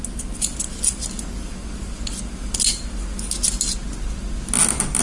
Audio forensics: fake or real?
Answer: real